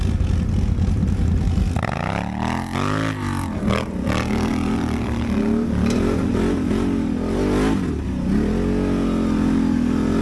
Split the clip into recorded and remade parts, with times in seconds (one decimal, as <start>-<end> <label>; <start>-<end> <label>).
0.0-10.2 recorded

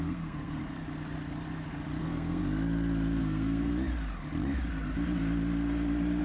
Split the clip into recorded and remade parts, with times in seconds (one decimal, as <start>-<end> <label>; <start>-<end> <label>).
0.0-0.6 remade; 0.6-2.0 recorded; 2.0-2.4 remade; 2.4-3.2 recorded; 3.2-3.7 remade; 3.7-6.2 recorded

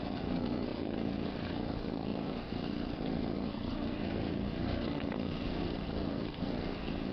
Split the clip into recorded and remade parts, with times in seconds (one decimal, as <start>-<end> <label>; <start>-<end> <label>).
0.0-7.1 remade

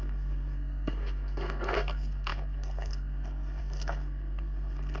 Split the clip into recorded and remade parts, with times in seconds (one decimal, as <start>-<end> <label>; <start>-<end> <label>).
0.0-5.0 remade